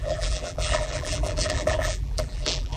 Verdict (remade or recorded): remade